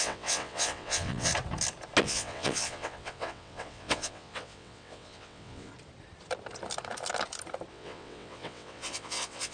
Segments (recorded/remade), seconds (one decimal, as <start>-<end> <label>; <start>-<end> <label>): 0.0-1.3 remade; 1.3-2.0 recorded; 2.0-5.7 remade; 5.7-7.7 recorded; 7.7-9.5 remade